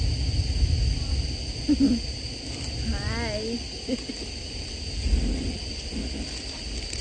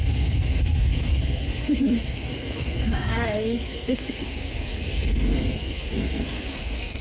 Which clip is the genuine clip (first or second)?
first